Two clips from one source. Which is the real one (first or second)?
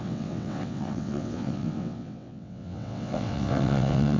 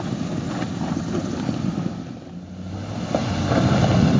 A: second